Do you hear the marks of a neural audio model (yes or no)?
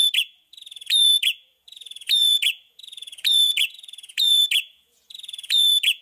yes